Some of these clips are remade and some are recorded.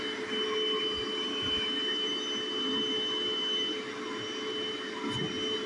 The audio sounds recorded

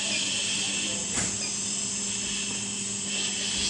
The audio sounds recorded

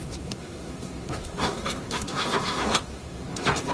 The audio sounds remade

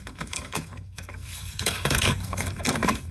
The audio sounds remade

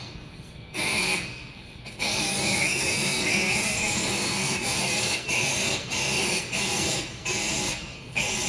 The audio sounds remade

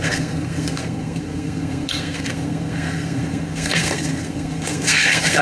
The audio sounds remade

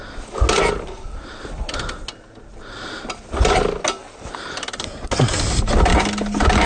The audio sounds recorded